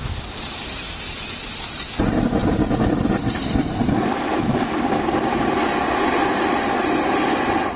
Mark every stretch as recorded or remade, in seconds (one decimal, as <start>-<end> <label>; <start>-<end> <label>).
0.0-0.8 remade; 0.8-2.4 recorded; 2.4-6.4 remade; 6.4-7.8 recorded